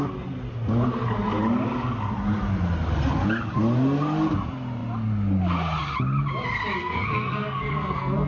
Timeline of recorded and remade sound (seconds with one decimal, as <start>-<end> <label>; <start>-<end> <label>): 0.0-6.8 recorded; 6.8-8.3 remade